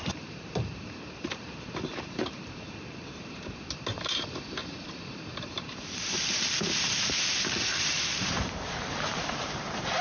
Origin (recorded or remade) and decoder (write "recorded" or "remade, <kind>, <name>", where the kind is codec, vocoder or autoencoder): remade, vocoder, BigVGAN v2